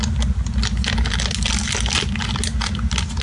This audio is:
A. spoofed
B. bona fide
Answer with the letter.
B